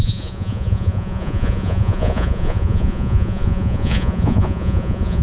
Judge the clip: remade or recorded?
remade